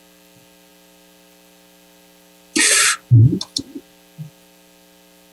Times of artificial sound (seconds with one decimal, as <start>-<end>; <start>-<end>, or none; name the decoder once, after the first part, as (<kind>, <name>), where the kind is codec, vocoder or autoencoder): none